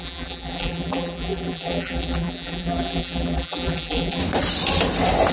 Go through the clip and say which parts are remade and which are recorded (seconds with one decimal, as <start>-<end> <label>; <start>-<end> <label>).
0.0-4.2 remade; 4.2-5.3 recorded

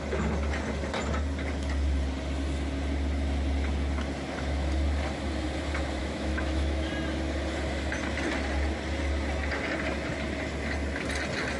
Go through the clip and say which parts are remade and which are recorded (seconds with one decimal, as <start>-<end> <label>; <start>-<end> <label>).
0.0-6.0 recorded; 6.0-6.9 remade; 6.9-11.6 recorded

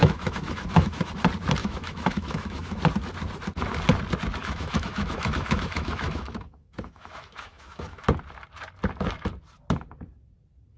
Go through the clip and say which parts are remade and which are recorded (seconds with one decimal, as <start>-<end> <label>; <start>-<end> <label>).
0.0-1.1 remade; 1.1-1.6 recorded; 1.6-2.8 remade; 2.8-4.4 recorded; 4.4-8.0 remade; 8.0-10.8 recorded

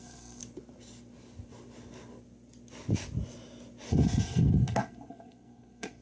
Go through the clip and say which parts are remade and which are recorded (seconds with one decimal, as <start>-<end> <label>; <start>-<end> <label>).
0.0-0.4 remade; 0.4-3.9 recorded; 3.9-6.0 remade

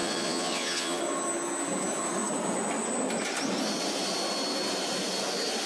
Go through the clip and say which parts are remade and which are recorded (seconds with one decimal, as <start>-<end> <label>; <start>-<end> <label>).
0.0-1.0 remade; 1.0-5.7 recorded

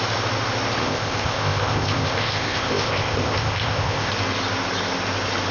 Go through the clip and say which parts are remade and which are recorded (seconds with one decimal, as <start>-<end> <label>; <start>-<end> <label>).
0.0-0.8 recorded; 0.8-4.1 remade; 4.1-5.5 recorded

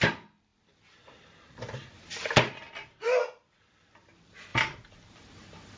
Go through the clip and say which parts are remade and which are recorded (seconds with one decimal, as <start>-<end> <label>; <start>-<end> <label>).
0.0-4.5 recorded; 4.5-5.8 remade

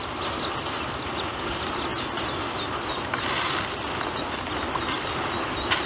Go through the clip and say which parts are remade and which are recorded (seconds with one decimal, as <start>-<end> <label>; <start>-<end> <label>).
0.0-5.9 recorded